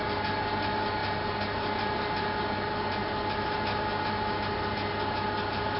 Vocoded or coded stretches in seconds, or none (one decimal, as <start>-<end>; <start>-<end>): 0.0-1.0; 4.5-5.8